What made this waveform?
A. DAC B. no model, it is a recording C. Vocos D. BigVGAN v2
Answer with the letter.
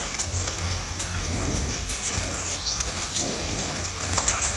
A